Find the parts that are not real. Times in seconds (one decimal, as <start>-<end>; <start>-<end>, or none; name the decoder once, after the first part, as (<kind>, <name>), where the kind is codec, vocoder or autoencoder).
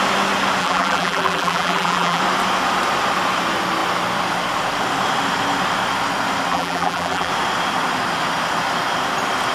0.6-2.2 (vocoder, BigVGAN v2); 6.5-7.3